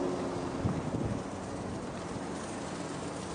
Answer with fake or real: real